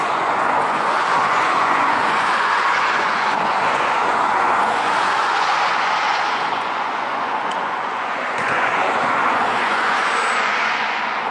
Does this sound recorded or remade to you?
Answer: remade